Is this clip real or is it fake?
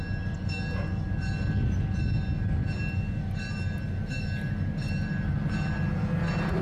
real